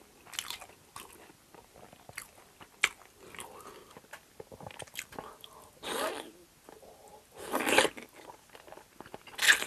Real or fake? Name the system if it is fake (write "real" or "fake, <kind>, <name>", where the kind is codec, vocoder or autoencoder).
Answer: real